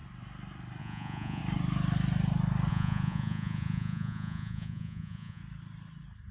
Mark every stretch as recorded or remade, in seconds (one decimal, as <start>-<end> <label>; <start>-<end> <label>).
0.0-0.8 recorded; 0.8-1.4 remade; 1.4-2.7 recorded; 2.7-5.4 remade; 5.4-6.3 recorded